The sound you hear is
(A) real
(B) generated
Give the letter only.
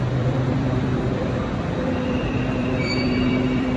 B